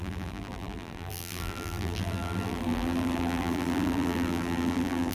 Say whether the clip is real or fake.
fake